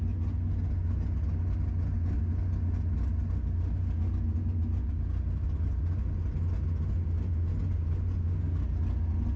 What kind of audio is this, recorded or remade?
recorded